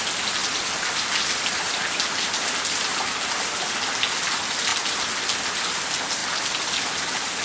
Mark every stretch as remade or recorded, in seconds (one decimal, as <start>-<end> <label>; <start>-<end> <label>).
0.0-0.4 recorded; 0.4-3.3 remade; 3.3-6.2 recorded; 6.2-6.8 remade; 6.8-7.4 recorded